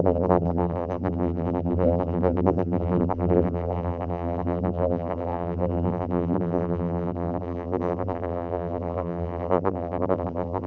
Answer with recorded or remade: remade